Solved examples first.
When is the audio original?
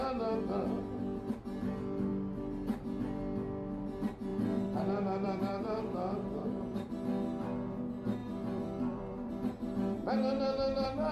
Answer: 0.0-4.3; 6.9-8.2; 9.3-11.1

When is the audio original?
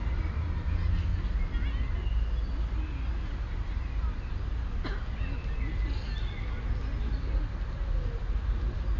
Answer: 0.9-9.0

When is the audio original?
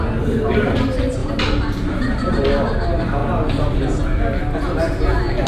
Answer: 0.0-1.2; 2.7-5.5